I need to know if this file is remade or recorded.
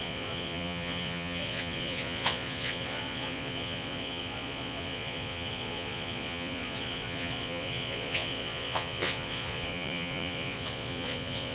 remade